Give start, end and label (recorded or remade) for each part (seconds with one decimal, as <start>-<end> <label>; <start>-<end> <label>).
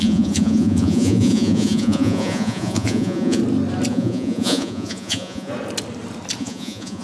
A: 0.0-3.4 remade; 3.4-3.9 recorded; 3.9-5.5 remade; 5.5-6.4 recorded; 6.4-7.0 remade